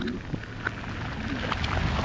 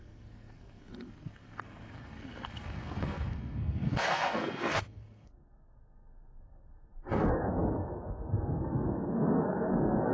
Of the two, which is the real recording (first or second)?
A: first